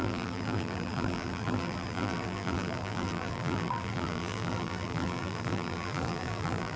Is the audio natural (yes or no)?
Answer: no